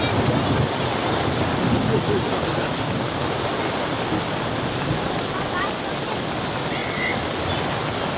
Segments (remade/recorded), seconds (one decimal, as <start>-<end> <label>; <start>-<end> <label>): 0.0-8.2 recorded